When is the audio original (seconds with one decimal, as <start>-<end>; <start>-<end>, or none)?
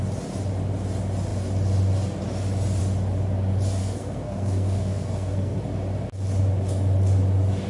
0.0-3.8; 5.6-7.7